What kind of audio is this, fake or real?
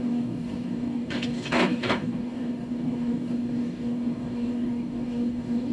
fake